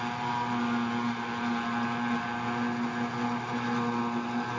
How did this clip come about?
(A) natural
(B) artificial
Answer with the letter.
A